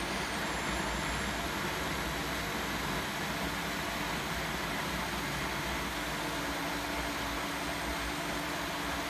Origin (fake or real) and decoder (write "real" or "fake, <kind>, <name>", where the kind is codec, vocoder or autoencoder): real